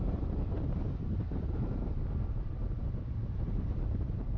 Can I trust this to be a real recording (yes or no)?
no